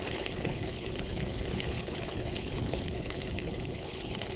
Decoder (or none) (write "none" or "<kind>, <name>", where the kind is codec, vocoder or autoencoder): codec, HILCodec